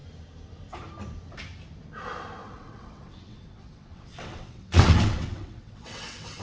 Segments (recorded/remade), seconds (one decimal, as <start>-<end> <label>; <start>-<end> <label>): 0.0-2.4 recorded; 2.4-6.4 remade